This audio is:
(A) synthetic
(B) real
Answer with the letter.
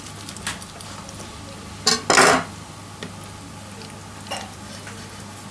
B